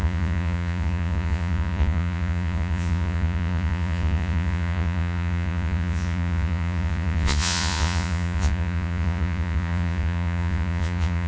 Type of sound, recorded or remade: remade